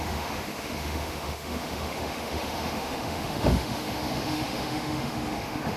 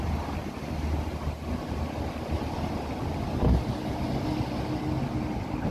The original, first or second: second